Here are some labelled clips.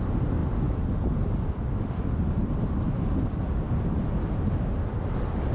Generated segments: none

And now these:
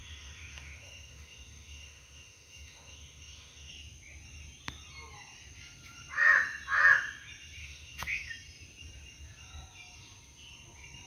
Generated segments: 0.0-3.7 (autoencoder, DAC-VAE); 7.6-8.3

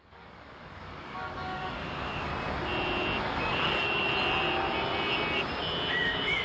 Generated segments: 0.0-2.3 (codec, DAC); 3.2-4.1; 5.9-6.4